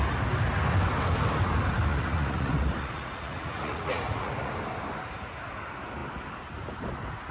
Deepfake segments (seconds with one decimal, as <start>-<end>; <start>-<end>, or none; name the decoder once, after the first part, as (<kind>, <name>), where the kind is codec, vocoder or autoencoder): 1.9-4.5 (vocoder, Vocos)